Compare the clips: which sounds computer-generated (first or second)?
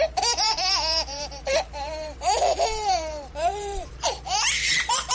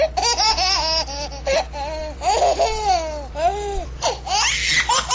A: first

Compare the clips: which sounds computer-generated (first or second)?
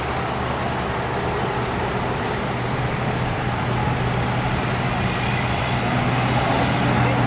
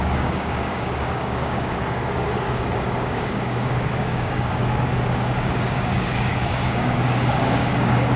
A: second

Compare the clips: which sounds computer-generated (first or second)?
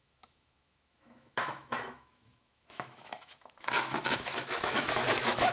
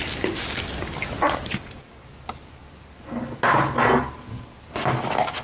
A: first